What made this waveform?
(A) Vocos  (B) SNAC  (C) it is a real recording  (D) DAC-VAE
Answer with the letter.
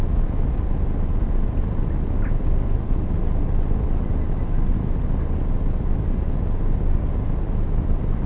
C